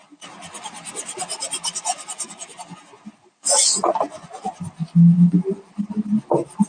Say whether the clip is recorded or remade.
recorded